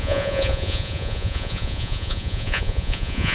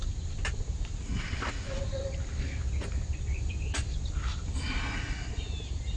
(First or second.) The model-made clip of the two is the first